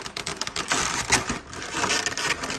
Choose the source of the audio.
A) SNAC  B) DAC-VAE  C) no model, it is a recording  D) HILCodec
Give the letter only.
C